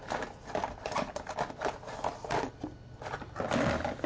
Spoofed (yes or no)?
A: no